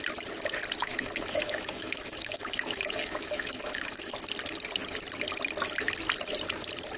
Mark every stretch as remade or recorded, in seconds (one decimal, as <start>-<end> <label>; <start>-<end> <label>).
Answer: 0.0-0.8 recorded; 0.8-4.2 remade; 4.2-7.0 recorded